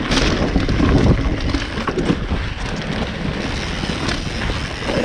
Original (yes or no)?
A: yes